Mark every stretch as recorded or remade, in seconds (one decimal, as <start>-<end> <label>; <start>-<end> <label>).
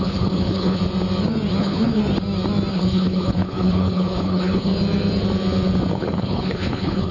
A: 0.0-0.8 remade; 0.8-1.6 recorded; 1.6-2.0 remade; 2.0-2.7 recorded; 2.7-4.7 remade; 4.7-5.9 recorded; 5.9-7.1 remade